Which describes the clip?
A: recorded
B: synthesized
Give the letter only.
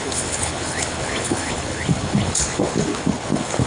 B